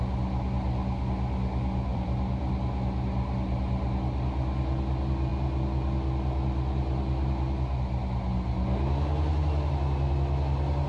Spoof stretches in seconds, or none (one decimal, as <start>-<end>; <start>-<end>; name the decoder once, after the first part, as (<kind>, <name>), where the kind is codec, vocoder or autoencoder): 1.9-2.5 (vocoder, BigVGAN v2)